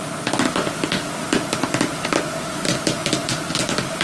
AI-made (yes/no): no